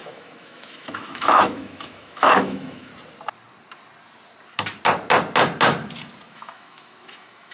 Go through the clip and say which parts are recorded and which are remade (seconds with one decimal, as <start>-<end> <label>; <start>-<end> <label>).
0.0-2.9 remade; 2.9-6.3 recorded; 6.3-7.5 remade